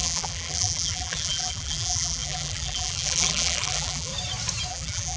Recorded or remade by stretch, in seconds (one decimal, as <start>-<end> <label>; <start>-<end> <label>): 0.0-4.1 remade; 4.1-4.7 recorded; 4.7-5.2 remade